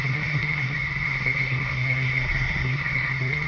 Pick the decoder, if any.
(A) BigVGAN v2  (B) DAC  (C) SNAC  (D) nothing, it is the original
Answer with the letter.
C